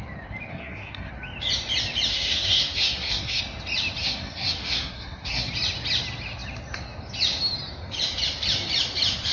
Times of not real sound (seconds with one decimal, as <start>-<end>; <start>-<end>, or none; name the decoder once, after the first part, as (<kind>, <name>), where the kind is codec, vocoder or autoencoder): 0.5-1.1 (codec, SNAC); 2.1-3.4; 4.0-5.5